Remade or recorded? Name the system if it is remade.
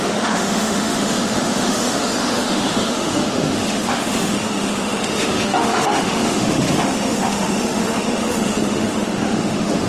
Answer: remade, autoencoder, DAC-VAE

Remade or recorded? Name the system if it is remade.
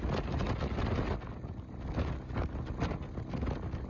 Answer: recorded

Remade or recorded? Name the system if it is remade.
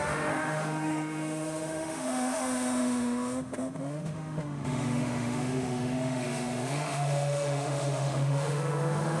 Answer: remade, autoencoder, DAC-VAE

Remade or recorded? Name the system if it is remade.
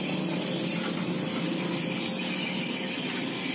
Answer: recorded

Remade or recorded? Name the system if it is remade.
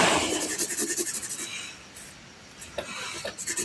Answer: recorded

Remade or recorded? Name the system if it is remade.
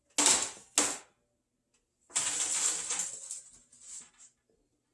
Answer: recorded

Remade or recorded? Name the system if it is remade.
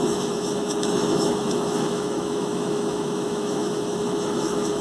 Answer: remade, autoencoder, DAC-VAE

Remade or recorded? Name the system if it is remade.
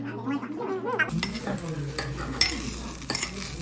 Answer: recorded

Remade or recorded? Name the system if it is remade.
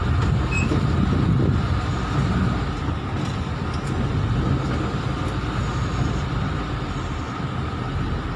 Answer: recorded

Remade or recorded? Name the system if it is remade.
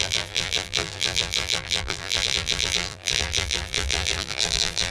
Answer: remade, vocoder, BigVGAN v2